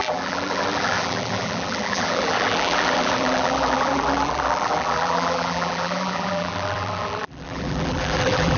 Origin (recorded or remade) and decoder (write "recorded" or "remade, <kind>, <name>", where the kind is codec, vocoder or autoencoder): remade, vocoder, BigVGAN v2